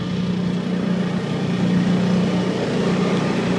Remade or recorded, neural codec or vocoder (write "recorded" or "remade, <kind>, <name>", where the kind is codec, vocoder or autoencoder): recorded